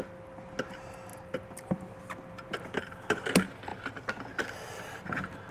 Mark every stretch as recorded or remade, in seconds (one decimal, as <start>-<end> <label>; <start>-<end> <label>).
0.0-5.5 recorded